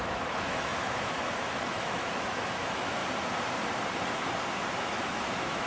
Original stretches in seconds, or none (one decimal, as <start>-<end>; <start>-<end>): 3.0-4.8